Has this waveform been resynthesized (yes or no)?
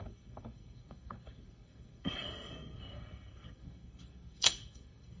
yes